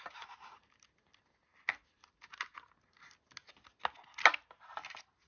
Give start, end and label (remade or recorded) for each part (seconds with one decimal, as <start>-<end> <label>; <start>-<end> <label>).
0.0-5.3 recorded